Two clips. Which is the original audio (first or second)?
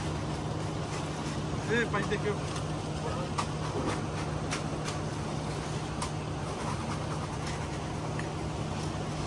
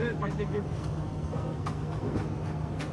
first